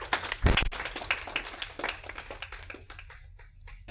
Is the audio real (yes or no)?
yes